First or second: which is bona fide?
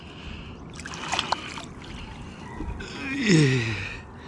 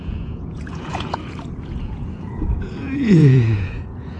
first